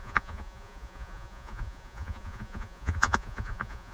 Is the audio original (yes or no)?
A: no